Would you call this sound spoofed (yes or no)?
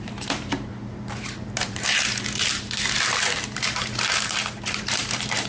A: yes